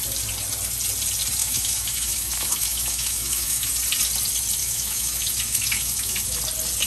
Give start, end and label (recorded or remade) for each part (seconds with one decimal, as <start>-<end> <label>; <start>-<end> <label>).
0.0-1.4 recorded; 1.4-3.7 remade; 3.7-4.6 recorded; 4.6-6.4 remade; 6.4-6.9 recorded